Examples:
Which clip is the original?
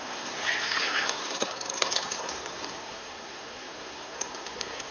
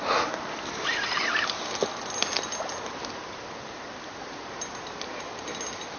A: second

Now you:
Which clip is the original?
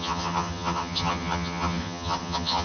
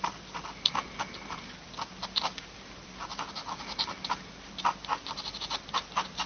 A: second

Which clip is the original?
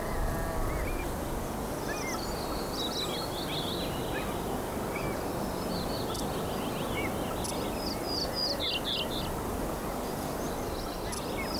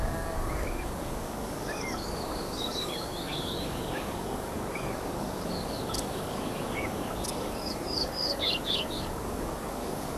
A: first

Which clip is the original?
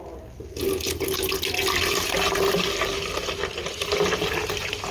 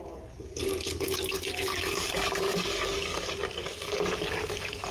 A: first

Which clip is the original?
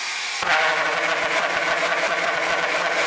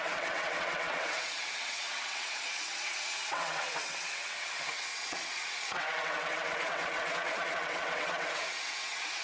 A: first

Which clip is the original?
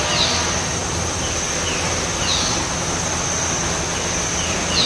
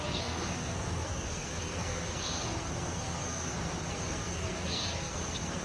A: first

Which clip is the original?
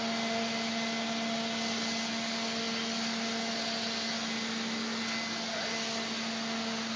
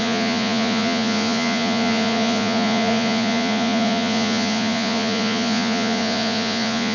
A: first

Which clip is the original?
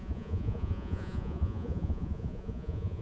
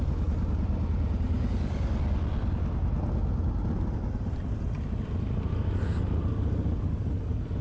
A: second